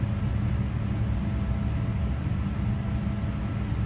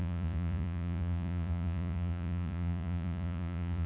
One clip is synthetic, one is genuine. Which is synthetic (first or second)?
second